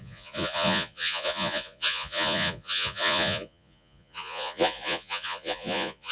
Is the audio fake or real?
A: fake